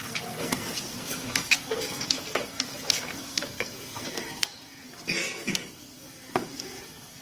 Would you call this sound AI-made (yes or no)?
yes